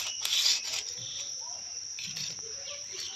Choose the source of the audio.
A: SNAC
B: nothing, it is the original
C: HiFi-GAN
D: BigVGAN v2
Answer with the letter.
B